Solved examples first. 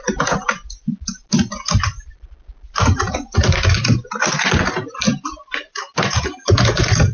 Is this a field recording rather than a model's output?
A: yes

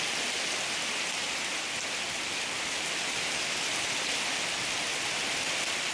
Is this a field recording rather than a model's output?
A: yes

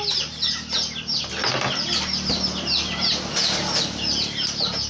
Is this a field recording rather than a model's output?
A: yes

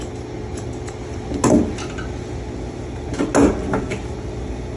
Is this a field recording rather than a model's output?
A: yes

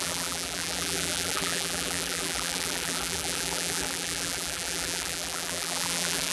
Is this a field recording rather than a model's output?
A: no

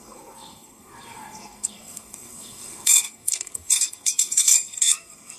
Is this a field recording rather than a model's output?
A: no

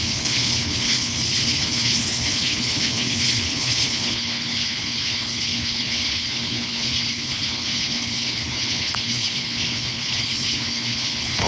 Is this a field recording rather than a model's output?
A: no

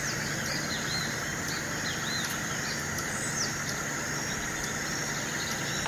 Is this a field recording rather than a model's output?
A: yes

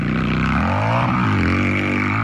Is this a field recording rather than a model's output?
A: yes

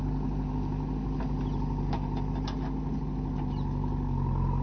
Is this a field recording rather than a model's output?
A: yes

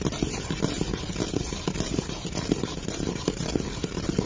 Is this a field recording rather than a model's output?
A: yes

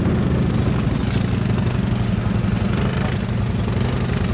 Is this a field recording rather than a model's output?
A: yes